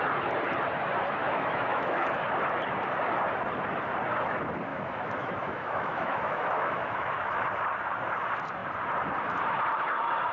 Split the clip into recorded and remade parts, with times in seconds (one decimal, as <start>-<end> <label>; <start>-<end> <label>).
0.0-1.2 recorded; 1.2-2.1 remade; 2.1-4.7 recorded; 4.7-7.4 remade; 7.4-10.3 recorded